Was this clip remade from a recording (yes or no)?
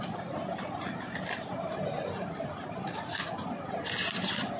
no